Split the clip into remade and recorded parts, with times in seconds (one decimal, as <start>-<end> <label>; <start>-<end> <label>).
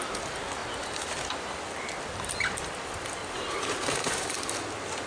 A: 0.0-5.1 recorded